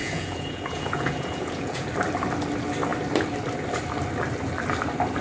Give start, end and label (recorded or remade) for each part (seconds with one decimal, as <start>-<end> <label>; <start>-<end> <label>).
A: 0.0-1.9 remade; 1.9-5.2 recorded